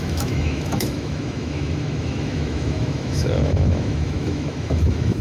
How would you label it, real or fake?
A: fake